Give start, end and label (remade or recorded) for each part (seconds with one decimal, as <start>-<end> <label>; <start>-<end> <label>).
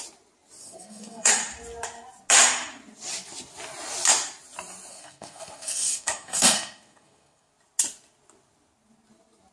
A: 0.0-0.6 recorded; 0.6-1.3 remade; 1.3-4.9 recorded; 4.9-7.5 remade; 7.5-9.5 recorded